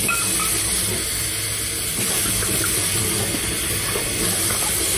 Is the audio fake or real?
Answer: real